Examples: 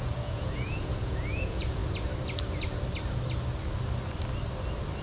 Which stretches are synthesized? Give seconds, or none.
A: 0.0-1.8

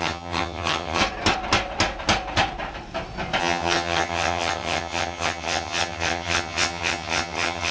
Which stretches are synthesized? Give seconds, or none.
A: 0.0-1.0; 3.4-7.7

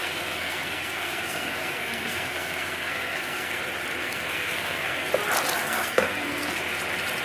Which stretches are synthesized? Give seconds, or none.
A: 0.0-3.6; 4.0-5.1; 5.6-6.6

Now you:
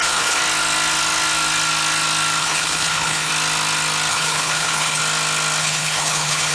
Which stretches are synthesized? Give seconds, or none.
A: 0.0-0.4; 2.4-3.3; 4.1-5.0; 5.6-6.5

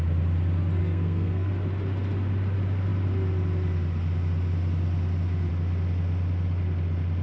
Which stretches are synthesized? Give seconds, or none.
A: 0.8-1.5

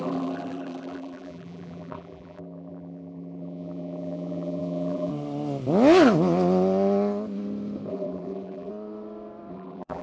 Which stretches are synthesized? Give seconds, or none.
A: 0.0-5.1; 7.9-8.7; 9.5-10.0

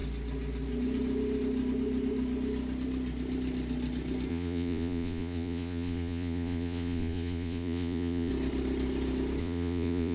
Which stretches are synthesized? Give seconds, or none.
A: 4.3-8.3; 9.4-10.1

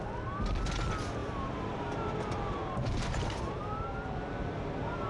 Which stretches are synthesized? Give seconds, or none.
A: 1.2-3.4